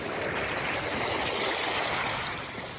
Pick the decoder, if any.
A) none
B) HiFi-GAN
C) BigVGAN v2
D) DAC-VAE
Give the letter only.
A